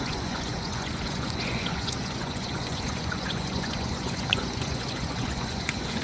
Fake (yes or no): yes